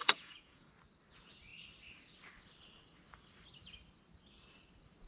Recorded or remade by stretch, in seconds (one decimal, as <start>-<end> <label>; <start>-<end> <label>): 0.0-0.7 remade; 0.7-5.1 recorded